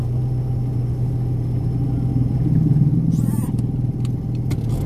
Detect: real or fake real